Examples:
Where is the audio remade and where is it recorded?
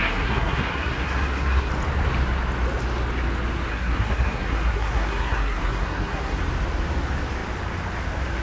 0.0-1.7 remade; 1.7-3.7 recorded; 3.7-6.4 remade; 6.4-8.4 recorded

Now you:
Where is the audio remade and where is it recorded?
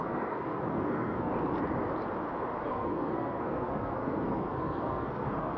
0.0-1.3 remade; 1.3-2.7 recorded; 2.7-5.6 remade